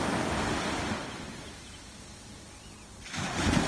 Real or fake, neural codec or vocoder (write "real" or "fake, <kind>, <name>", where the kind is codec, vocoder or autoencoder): real